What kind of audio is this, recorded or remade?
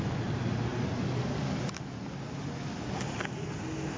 recorded